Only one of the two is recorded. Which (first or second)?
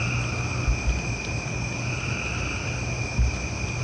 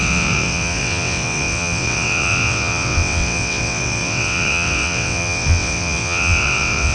first